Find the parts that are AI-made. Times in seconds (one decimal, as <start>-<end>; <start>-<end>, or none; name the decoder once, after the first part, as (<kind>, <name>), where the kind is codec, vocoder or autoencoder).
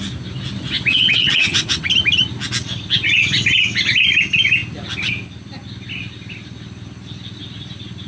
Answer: 0.9-1.9 (vocoder, WaveNeXt)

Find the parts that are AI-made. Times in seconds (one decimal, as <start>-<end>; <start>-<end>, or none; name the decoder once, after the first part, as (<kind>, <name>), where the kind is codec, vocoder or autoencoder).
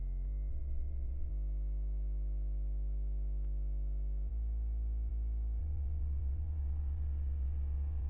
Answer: 0.5-1.3 (vocoder, WaveNeXt); 5.6-8.1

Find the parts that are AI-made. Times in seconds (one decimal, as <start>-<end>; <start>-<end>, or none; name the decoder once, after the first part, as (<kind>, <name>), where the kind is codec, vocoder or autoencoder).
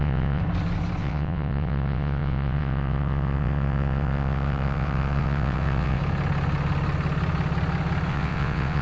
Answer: 0.0-0.4 (vocoder, WaveNeXt); 1.0-6.0; 8.1-8.8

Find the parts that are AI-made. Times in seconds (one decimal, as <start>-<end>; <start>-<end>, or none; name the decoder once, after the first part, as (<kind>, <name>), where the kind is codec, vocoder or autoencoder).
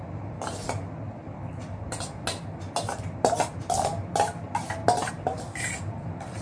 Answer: none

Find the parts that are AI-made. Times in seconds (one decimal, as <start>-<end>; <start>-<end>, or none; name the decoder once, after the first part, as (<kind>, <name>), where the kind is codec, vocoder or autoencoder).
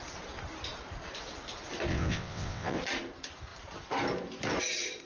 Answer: 1.9-2.8 (vocoder, WaveNeXt)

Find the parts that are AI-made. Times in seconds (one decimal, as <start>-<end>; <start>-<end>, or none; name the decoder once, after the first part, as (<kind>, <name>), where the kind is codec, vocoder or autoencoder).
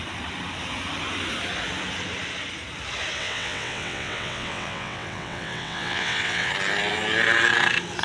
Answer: 3.2-6.5 (vocoder, WaveNeXt)